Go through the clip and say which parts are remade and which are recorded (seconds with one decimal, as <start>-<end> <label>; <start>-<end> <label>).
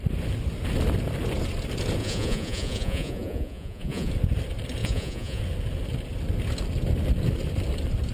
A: 0.0-2.0 recorded; 2.0-4.1 remade; 4.1-4.8 recorded; 4.8-5.4 remade; 5.4-8.1 recorded